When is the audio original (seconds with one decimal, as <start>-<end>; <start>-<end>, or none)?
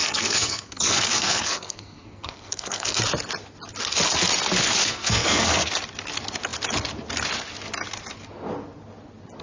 3.0-4.8; 5.7-9.4